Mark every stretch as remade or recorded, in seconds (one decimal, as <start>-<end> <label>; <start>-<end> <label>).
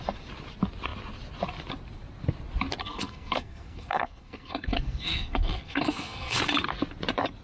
0.0-2.8 recorded; 2.8-6.4 remade; 6.4-7.4 recorded